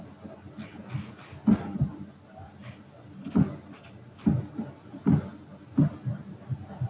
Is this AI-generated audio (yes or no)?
no